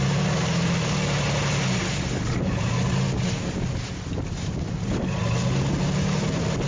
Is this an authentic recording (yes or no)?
yes